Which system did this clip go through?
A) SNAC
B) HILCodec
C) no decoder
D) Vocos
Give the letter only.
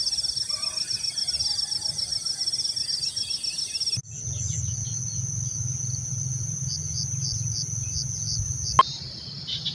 C